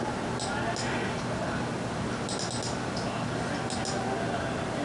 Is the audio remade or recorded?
recorded